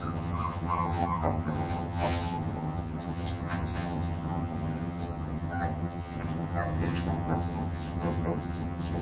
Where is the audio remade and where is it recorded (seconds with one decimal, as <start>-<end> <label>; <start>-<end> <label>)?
0.0-9.0 remade